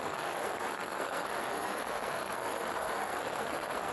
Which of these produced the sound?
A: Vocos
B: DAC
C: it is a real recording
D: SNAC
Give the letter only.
D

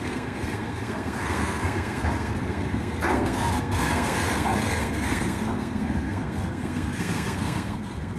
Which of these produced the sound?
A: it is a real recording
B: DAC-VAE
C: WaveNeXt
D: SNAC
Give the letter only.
D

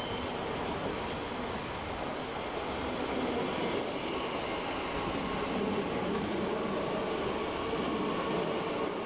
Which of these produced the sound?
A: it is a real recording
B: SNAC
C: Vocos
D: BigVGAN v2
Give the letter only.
A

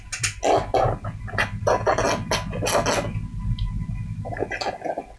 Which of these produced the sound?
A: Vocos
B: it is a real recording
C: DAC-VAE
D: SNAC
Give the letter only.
B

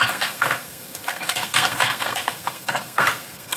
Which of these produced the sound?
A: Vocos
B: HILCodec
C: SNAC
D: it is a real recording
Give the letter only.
C